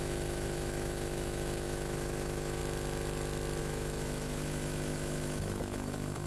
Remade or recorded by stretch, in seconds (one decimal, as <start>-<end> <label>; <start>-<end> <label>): 0.0-2.6 remade; 2.6-3.6 recorded; 3.6-6.3 remade